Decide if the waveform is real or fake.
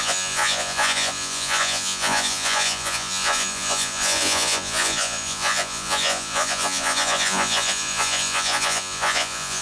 fake